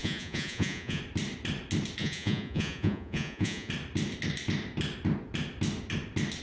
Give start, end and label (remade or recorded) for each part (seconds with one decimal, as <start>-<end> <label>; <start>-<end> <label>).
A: 0.0-1.0 remade; 1.0-2.0 recorded; 2.0-3.7 remade; 3.7-6.4 recorded